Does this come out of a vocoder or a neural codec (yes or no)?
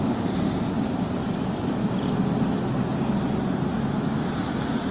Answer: no